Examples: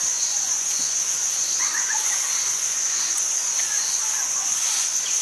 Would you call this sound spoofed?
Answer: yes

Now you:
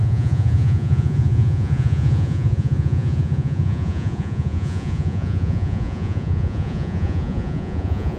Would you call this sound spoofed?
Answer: yes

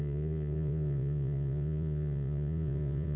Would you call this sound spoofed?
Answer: yes